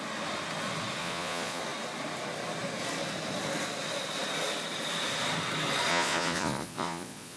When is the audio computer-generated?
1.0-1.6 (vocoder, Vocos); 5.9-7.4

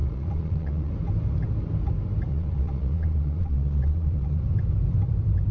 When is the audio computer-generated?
0.0-0.9 (vocoder, Vocos); 2.3-4.4